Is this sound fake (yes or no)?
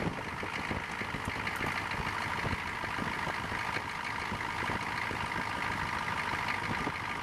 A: no